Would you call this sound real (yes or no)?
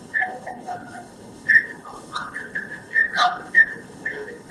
no